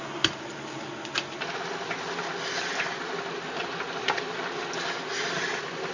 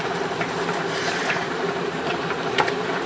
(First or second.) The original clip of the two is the first